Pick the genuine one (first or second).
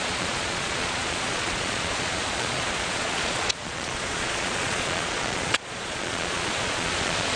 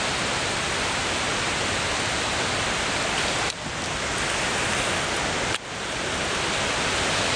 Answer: second